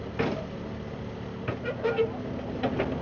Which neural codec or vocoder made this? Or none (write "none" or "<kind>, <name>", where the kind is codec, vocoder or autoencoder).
none